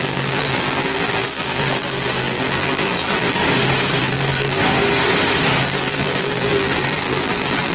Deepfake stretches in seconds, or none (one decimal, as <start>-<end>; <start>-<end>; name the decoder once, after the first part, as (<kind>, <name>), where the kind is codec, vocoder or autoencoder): 0.0-3.4 (vocoder, BigVGAN v2); 4.0-4.6; 5.6-7.7